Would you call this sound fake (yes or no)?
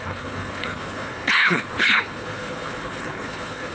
yes